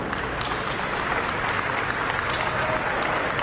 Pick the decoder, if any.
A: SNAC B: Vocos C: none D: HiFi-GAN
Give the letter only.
C